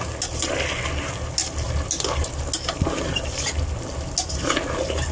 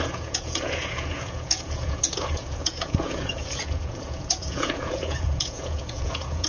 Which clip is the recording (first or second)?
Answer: first